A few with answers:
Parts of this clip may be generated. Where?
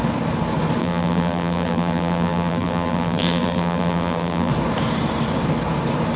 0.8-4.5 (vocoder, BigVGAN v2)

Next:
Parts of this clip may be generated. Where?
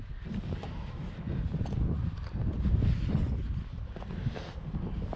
none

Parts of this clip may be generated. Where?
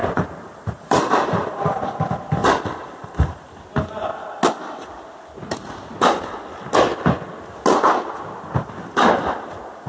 0.0-1.8 (vocoder, BigVGAN v2); 2.4-3.6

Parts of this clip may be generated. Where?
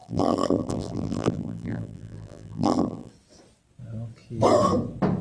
0.0-3.1 (vocoder, BigVGAN v2)